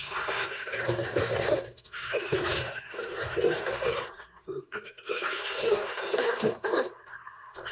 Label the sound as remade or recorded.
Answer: remade